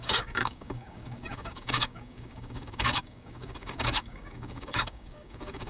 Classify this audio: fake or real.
fake